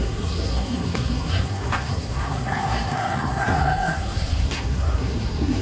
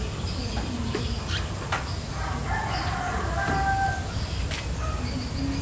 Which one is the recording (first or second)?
second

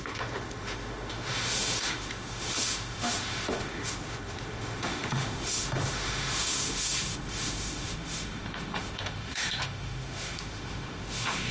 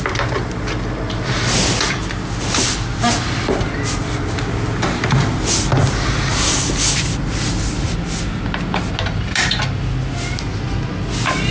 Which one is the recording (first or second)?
second